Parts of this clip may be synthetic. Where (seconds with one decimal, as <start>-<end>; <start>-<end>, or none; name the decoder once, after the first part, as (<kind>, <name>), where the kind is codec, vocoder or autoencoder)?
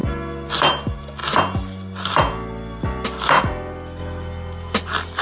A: none